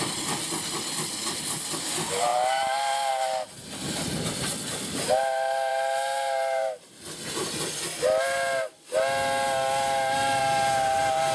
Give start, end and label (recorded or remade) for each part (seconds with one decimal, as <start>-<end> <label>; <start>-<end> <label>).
0.0-11.3 recorded